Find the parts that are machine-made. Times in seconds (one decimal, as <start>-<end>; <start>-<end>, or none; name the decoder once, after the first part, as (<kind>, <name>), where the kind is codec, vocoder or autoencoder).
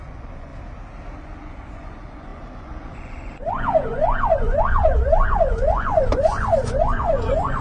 0.0-0.5 (vocoder, Vocos); 1.2-7.6